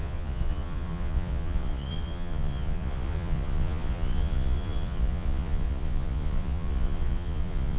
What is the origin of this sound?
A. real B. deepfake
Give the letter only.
B